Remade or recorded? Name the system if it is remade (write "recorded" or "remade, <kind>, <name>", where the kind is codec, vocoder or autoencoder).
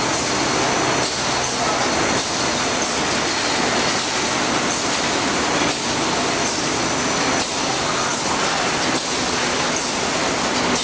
recorded